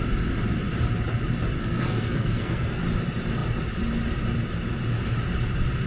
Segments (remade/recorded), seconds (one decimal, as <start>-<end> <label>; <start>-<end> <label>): 0.0-1.6 recorded; 1.6-2.8 remade; 2.8-5.9 recorded